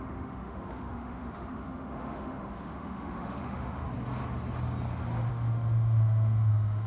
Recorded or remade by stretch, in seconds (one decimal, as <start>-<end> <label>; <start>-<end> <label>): 0.0-3.8 remade; 3.8-5.3 recorded; 5.3-6.9 remade